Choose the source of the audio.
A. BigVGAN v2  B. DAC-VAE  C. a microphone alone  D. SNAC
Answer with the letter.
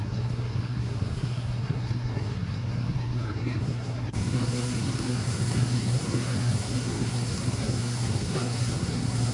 D